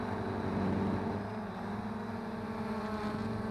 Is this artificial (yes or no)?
no